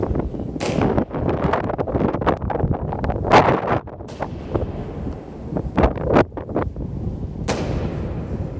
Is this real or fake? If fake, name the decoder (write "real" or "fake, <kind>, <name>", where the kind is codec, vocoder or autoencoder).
real